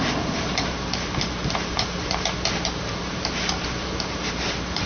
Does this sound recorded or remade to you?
remade